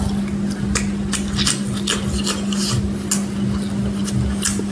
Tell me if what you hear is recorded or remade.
recorded